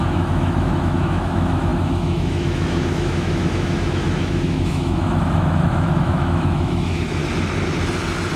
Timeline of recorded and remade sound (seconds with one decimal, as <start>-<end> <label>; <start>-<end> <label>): 0.0-7.2 remade; 7.2-8.4 recorded